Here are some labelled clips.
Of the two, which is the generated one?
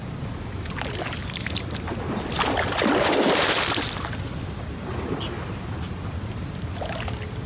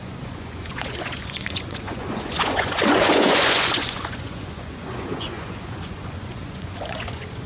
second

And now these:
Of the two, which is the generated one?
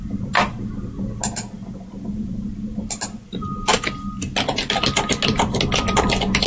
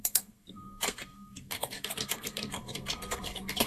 second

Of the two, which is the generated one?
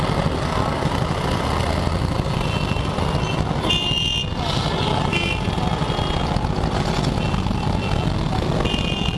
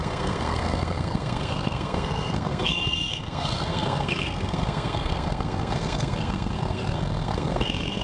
second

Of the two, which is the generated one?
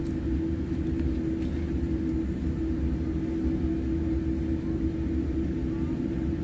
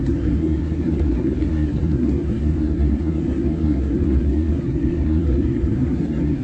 second